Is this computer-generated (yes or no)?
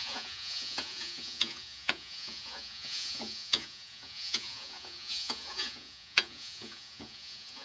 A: yes